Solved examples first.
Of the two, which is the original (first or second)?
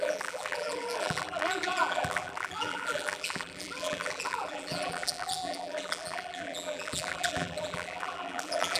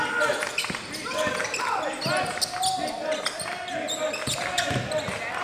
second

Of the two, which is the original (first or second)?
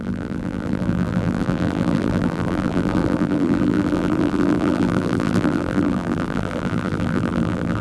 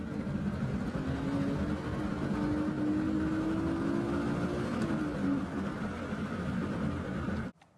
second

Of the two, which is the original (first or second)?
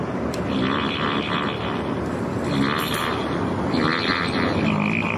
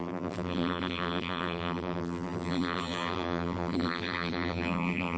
first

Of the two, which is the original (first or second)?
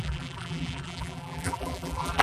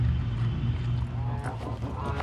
second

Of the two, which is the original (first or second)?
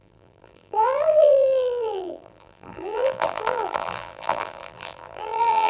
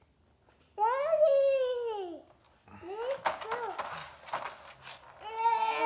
second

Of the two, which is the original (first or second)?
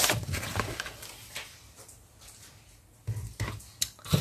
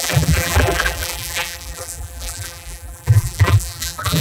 first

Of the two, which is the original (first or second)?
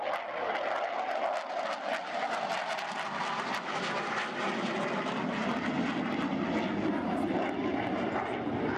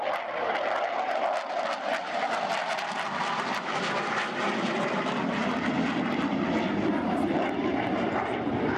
first